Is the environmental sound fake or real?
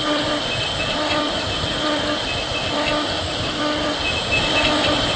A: real